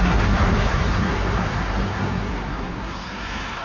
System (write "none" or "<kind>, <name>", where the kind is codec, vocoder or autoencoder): codec, SNAC